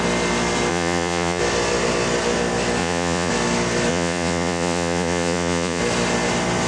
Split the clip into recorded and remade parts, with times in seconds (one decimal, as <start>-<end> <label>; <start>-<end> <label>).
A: 0.0-0.7 recorded; 0.7-1.4 remade; 1.4-2.8 recorded; 2.8-3.3 remade; 3.3-3.9 recorded; 3.9-5.8 remade; 5.8-6.7 recorded